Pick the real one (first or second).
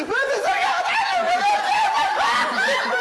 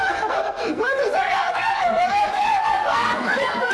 first